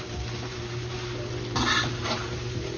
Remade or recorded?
remade